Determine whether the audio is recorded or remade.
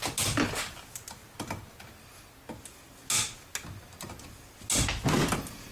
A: recorded